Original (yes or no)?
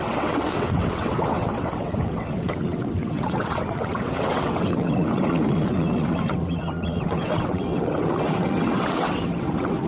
no